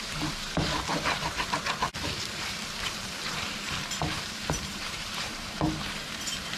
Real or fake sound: fake